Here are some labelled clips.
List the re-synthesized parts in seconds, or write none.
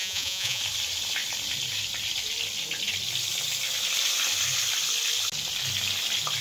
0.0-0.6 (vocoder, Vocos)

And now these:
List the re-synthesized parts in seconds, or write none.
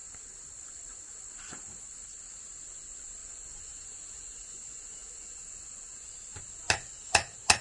3.2-6.1 (vocoder, Vocos)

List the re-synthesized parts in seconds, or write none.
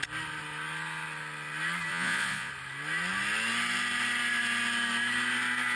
1.9-2.5 (vocoder, Vocos)